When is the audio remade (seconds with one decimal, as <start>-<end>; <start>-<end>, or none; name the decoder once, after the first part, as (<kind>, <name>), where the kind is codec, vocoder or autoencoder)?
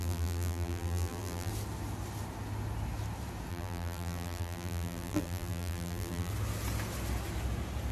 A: 0.0-1.5 (vocoder, BigVGAN v2); 3.5-6.3